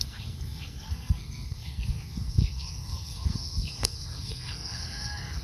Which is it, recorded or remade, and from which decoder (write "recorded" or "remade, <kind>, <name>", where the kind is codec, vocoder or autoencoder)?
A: remade, codec, SNAC